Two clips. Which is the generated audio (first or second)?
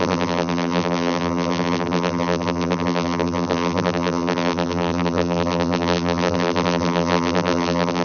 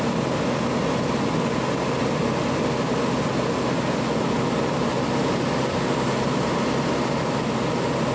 first